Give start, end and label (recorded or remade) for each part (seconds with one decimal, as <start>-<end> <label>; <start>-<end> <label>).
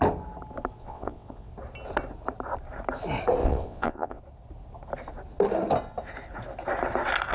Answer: 0.0-0.8 recorded; 0.8-1.5 remade; 1.5-3.4 recorded; 3.4-4.2 remade; 4.2-7.3 recorded